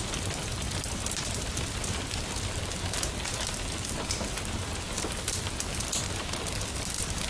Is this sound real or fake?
real